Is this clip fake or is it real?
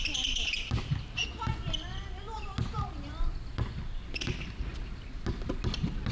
real